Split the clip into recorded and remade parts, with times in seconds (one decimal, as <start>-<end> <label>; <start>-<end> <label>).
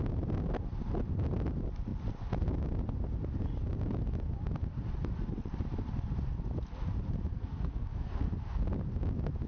0.0-7.3 recorded; 7.3-8.3 remade; 8.3-9.5 recorded